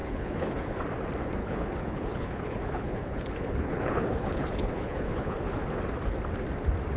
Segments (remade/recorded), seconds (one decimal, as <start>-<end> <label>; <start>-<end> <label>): 0.0-0.8 remade; 0.8-1.4 recorded; 1.4-5.6 remade; 5.6-7.0 recorded